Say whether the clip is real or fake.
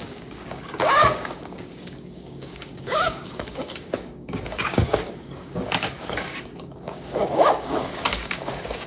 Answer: fake